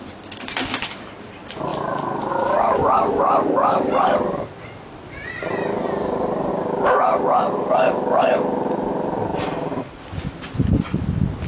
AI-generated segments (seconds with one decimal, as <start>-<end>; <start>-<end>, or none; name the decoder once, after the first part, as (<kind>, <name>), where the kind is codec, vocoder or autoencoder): 0.0-6.5 (vocoder, BigVGAN v2); 7.9-11.5

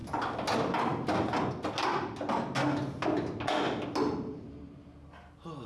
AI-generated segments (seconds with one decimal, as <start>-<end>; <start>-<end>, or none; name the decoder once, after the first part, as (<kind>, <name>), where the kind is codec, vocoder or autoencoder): none

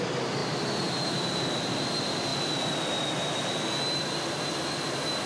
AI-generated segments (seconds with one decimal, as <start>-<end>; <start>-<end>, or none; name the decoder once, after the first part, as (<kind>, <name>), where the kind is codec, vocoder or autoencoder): 0.0-2.3 (vocoder, BigVGAN v2); 4.5-5.3